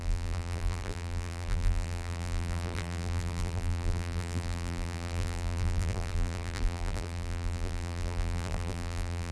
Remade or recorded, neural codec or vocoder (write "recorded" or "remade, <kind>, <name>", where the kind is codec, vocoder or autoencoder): remade, vocoder, BigVGAN v2